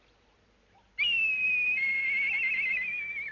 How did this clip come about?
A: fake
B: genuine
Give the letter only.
B